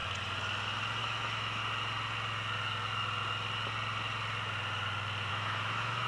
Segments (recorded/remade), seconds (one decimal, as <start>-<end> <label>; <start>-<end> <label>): 0.0-1.0 recorded; 1.0-1.6 remade; 1.6-5.3 recorded; 5.3-6.1 remade